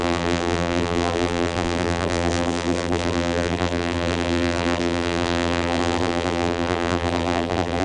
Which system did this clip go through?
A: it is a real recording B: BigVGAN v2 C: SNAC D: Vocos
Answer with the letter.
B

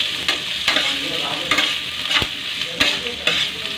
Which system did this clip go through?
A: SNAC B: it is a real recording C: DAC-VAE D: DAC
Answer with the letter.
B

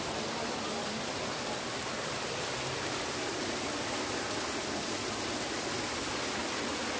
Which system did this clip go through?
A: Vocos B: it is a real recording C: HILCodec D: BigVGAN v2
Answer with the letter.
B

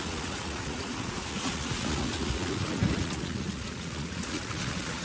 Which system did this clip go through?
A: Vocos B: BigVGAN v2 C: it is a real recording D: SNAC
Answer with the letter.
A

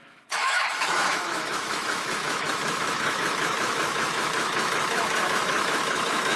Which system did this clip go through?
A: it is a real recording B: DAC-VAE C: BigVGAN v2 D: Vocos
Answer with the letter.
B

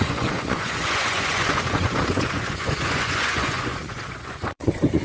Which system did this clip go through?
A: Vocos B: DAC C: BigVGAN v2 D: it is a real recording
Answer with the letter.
A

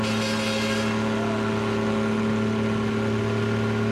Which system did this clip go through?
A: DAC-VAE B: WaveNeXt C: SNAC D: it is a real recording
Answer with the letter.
D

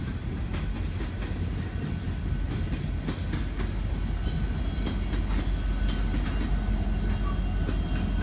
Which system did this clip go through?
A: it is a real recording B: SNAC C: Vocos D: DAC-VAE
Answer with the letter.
A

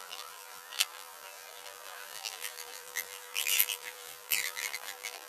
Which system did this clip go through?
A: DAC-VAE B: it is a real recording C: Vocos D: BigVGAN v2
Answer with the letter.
D